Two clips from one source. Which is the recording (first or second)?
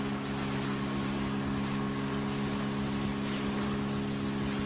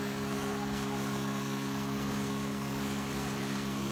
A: first